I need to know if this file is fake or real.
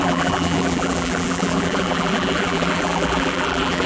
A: fake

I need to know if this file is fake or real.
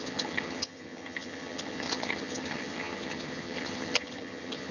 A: fake